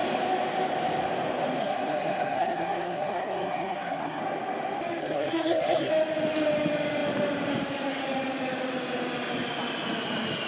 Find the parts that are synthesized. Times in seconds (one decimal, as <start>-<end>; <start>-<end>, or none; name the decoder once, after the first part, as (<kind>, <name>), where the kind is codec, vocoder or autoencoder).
1.6-4.2 (codec, SNAC); 5.0-5.9